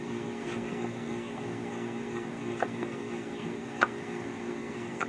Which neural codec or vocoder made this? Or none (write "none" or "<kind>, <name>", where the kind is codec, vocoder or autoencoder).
codec, SNAC